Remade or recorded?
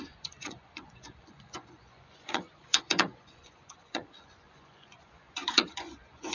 remade